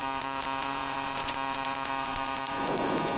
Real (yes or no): no